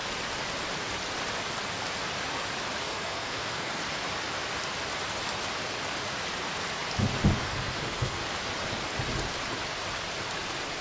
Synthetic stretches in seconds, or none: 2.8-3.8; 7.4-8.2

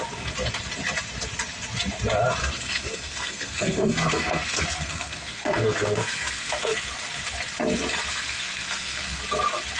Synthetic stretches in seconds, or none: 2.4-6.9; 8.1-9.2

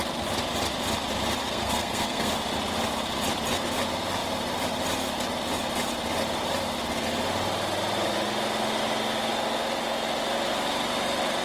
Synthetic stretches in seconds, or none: 1.4-2.3

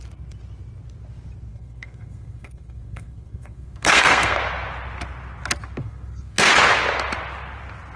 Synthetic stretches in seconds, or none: 1.5-4.4; 5.8-6.5

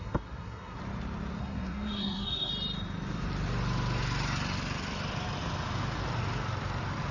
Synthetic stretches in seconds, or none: 0.0-0.8; 1.4-2.5

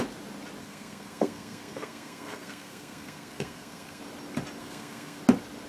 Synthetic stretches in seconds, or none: 0.6-4.0; 4.6-5.2

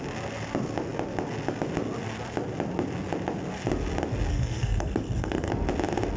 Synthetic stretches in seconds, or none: 4.3-5.5